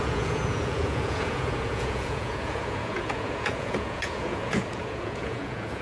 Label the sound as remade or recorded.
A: remade